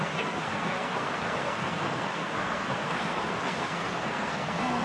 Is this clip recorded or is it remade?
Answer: remade